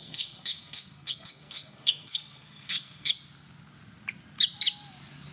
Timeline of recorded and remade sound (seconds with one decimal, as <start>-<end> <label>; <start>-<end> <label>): 0.0-3.1 remade; 3.1-5.3 recorded